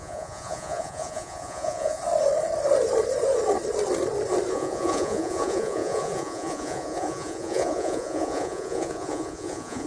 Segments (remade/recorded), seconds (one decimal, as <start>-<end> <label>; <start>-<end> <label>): 0.0-2.0 remade; 2.0-4.5 recorded; 4.5-9.9 remade